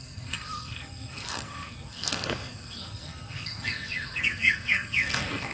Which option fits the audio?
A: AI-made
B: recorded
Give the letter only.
A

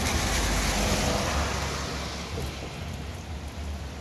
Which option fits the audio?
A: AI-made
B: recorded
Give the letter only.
B